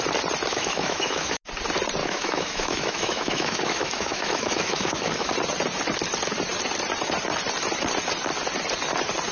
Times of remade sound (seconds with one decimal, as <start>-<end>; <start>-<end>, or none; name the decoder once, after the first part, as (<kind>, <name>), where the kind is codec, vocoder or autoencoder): 0.5-1.4 (autoencoder, DAC-VAE); 2.0-5.3